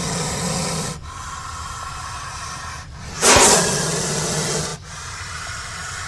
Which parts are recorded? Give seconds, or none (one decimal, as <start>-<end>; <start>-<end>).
0.0-6.1